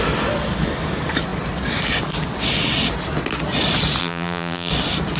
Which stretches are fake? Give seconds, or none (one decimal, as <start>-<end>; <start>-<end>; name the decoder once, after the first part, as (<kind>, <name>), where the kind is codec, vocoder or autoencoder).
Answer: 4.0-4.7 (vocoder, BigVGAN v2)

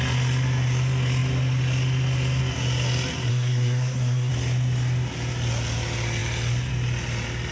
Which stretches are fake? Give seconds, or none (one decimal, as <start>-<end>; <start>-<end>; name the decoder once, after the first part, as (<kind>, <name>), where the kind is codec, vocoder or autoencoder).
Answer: 3.3-4.3 (codec, SNAC)

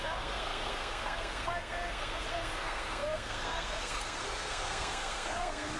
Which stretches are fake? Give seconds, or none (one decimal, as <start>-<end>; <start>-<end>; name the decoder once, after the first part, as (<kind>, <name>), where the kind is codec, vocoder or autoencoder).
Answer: 0.0-5.8 (codec, SNAC)

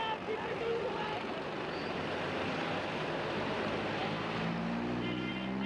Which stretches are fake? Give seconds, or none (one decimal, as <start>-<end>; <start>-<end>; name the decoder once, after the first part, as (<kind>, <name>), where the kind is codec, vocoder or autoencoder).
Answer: none

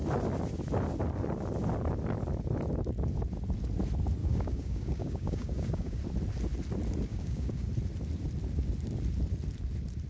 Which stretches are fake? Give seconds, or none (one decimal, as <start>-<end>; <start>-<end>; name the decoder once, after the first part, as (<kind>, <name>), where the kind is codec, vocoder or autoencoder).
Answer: 4.2-6.0 (codec, DAC); 7.1-7.7